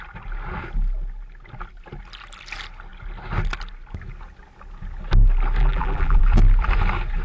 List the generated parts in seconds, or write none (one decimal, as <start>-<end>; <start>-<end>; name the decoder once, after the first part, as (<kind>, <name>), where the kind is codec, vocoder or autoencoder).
5.6-6.2 (vocoder, BigVGAN v2)